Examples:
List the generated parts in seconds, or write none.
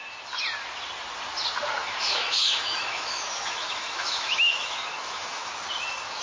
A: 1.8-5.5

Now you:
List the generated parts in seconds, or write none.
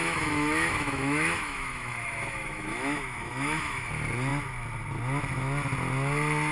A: 0.0-3.9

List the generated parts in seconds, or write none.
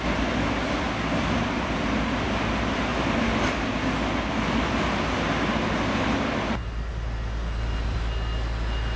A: none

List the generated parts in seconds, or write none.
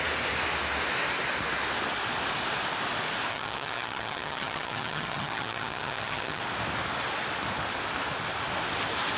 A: 3.3-6.4